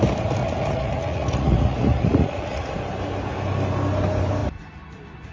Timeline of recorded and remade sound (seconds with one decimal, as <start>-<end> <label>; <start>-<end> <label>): 0.0-0.4 recorded; 0.4-2.7 remade; 2.7-5.3 recorded